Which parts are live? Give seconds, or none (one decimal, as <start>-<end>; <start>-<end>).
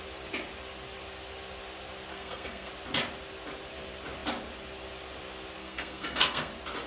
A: 0.0-2.1; 2.7-5.6; 6.5-6.9